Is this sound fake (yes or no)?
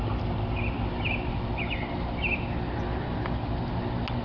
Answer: no